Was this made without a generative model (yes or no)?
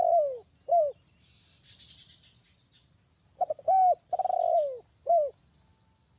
yes